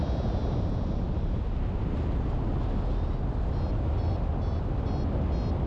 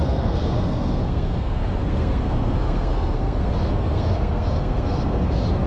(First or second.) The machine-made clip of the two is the second